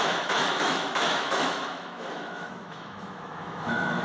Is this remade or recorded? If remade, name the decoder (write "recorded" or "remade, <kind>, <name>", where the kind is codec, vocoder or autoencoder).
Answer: remade, autoencoder, DAC-VAE